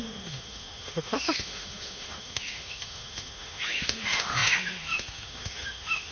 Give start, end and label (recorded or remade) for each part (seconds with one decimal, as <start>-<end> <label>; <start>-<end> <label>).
0.0-6.1 remade